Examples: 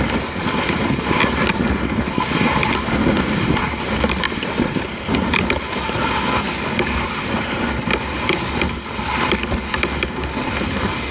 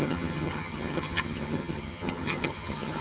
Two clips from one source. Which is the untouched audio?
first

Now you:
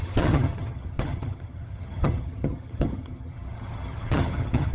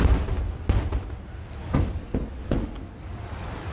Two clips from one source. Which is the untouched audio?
second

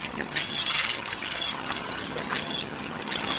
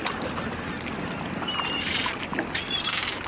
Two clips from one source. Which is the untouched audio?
second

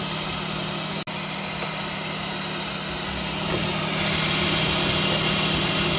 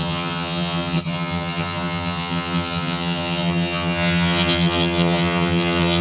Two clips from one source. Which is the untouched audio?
first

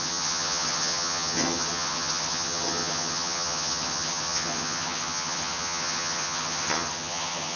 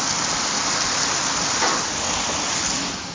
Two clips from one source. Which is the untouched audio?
second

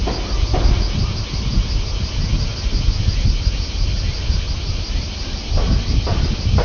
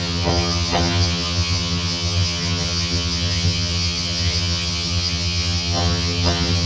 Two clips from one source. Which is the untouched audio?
first